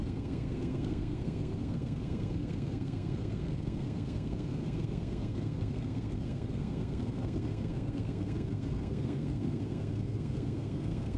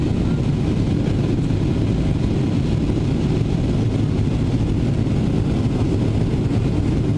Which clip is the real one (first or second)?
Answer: second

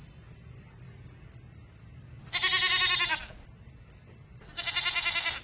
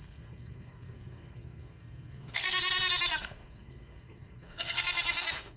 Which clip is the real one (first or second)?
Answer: first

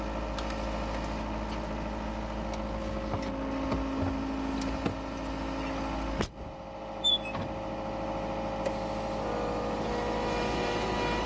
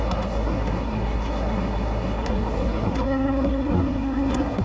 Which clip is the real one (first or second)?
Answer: first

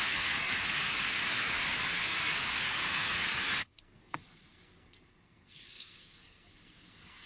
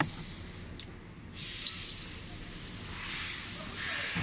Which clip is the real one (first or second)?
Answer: second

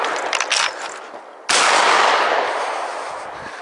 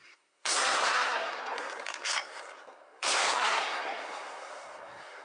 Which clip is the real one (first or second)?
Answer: first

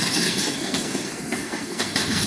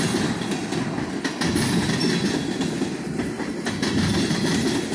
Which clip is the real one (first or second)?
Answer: second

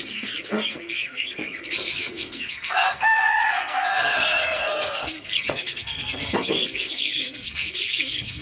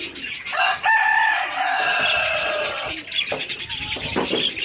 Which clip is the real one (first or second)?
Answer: second